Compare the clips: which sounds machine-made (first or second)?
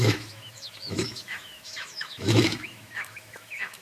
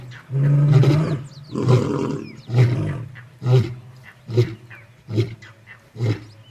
first